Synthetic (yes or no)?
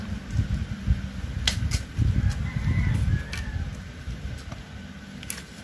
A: no